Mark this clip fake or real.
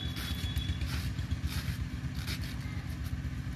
real